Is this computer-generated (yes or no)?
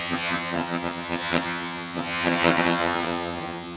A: yes